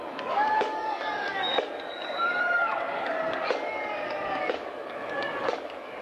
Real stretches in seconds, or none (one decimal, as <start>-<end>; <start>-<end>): none